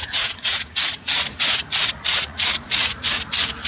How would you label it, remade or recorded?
remade